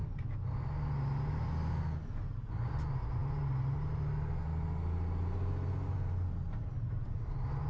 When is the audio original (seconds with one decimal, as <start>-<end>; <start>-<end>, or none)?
0.0-7.7